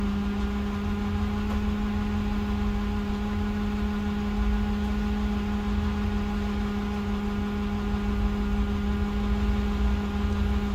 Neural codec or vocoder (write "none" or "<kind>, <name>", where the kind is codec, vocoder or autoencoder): none